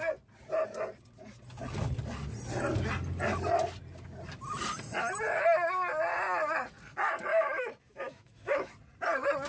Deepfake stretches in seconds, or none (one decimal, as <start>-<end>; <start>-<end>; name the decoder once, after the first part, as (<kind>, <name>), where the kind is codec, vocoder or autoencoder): 7.3-8.7 (autoencoder, DAC-VAE)

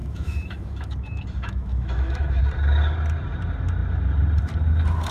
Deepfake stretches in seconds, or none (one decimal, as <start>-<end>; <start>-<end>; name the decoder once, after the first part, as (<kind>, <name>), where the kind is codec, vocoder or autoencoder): 0.0-2.4 (autoencoder, DAC-VAE)

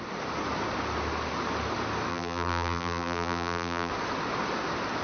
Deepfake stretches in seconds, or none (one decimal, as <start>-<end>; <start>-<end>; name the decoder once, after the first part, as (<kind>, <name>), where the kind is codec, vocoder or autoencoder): 2.1-3.9 (vocoder, BigVGAN v2)

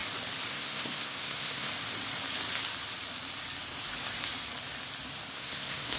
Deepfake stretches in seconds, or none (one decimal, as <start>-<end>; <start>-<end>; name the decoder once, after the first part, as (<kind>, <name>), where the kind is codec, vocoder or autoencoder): 0.5-1.7 (codec, SNAC); 5.3-6.0

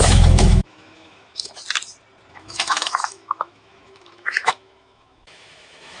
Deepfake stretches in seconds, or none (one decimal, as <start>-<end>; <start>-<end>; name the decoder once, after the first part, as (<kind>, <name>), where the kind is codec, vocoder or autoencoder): 0.0-1.6 (autoencoder, DAC-VAE); 2.3-6.0